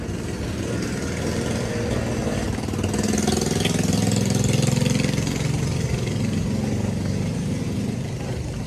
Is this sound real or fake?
real